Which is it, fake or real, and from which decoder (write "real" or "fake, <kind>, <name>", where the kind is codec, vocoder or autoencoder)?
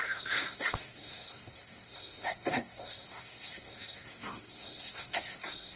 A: fake, codec, SNAC